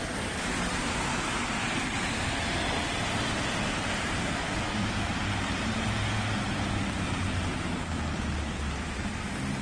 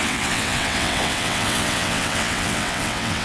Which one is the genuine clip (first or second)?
first